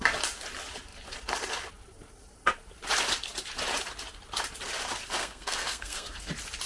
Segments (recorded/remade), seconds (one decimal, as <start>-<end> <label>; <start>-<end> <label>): 0.0-5.2 recorded; 5.2-6.3 remade; 6.3-6.7 recorded